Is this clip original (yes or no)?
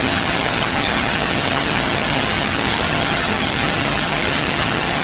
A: no